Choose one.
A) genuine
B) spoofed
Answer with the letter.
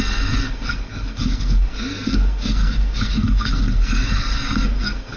B